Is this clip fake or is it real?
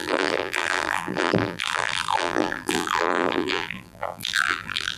fake